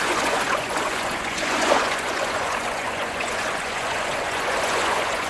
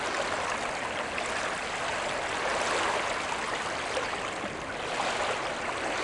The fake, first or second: first